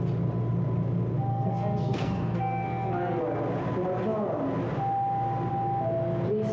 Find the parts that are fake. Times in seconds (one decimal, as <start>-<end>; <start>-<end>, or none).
1.3-3.2